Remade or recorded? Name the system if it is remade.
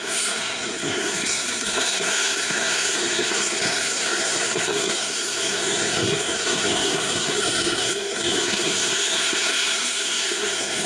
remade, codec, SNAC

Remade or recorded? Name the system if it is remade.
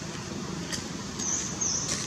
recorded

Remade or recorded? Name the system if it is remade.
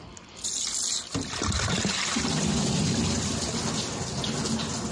recorded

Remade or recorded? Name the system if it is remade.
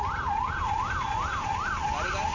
recorded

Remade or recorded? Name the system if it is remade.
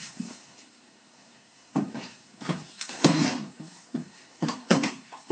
remade, codec, SNAC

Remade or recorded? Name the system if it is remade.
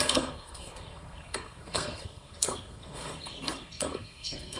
remade, codec, SNAC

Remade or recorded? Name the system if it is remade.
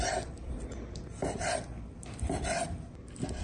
recorded